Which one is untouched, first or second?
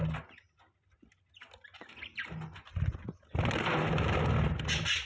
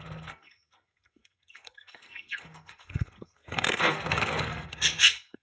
first